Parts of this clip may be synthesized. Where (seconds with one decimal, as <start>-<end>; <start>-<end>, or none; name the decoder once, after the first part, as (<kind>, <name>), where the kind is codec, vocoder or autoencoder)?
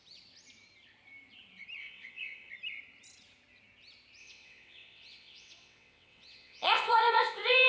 1.8-2.5 (vocoder, WaveNeXt); 4.2-7.7